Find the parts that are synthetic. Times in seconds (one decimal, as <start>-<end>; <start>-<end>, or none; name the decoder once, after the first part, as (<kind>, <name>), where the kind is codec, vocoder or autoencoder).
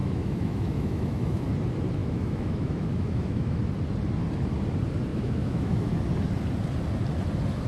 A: 0.0-1.5 (autoencoder, DAC-VAE); 2.0-3.6; 5.1-5.9